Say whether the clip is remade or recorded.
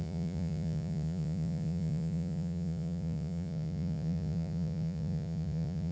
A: remade